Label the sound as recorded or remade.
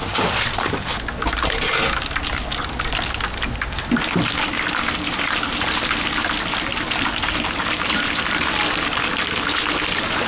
recorded